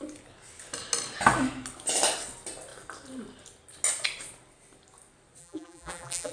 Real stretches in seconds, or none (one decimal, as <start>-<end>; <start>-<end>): 0.0-5.4

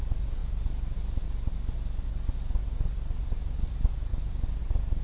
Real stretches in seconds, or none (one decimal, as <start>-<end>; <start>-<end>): 0.4-3.4; 4.1-4.6